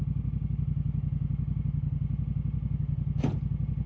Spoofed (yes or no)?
no